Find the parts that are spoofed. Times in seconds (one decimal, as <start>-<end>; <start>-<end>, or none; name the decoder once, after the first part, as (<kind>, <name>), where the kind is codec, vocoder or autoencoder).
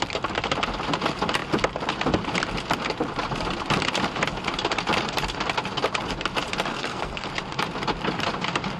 6.7-7.3 (codec, SNAC)